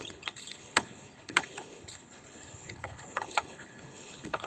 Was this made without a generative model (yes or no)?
no